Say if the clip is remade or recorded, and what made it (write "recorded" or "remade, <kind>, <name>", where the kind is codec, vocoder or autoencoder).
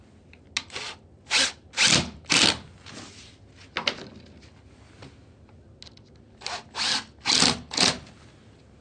recorded